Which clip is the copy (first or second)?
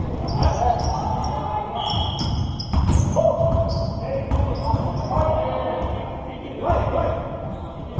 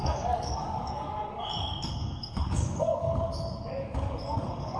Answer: second